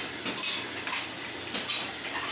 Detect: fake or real real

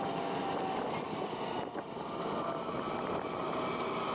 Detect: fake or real real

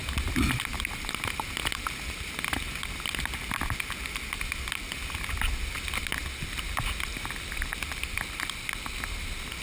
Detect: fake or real real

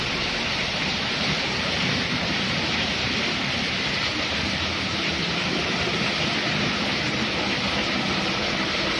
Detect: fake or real fake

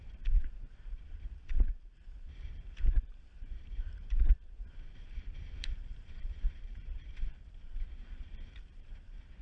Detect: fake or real fake